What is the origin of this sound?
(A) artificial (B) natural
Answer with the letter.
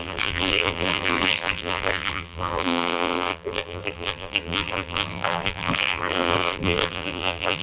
A